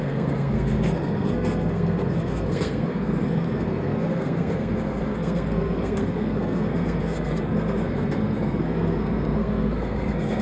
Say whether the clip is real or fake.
fake